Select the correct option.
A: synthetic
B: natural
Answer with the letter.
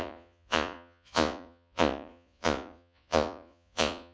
A